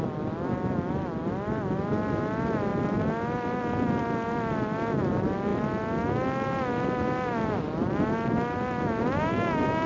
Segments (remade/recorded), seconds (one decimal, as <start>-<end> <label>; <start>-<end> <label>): 0.0-9.9 recorded